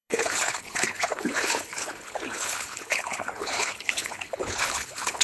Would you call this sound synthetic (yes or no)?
yes